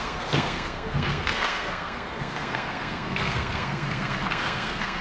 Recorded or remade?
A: remade